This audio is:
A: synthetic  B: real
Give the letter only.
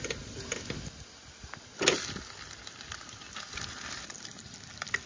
B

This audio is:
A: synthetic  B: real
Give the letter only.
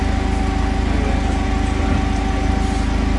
B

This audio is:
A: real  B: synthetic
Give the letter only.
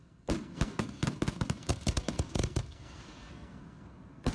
B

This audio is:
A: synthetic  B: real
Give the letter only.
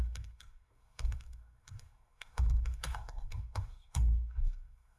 A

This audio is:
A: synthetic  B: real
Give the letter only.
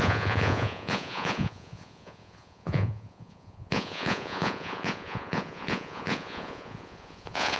A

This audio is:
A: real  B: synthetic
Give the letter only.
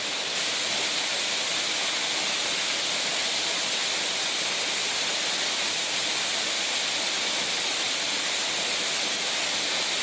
A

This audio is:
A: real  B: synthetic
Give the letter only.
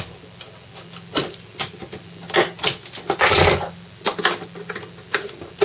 A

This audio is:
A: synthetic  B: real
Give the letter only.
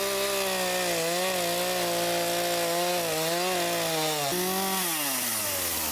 B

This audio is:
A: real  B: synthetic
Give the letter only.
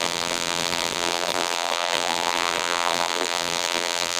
B